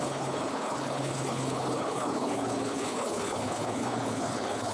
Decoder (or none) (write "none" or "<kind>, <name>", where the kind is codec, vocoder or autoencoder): codec, HILCodec